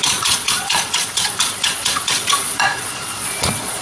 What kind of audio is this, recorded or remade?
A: remade